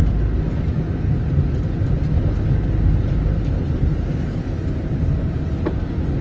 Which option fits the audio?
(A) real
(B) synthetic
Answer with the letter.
A